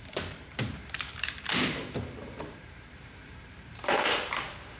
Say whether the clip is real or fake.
fake